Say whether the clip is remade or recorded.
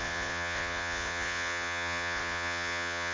remade